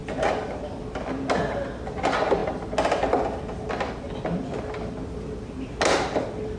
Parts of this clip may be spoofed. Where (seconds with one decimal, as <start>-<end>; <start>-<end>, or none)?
none